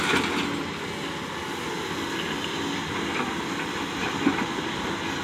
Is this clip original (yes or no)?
yes